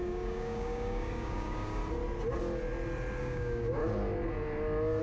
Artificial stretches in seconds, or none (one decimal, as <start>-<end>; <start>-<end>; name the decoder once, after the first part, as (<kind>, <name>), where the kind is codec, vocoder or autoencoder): 0.0-1.8 (codec, DAC); 3.2-3.8